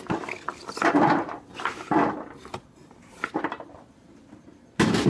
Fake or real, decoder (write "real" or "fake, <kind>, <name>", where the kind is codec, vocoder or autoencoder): real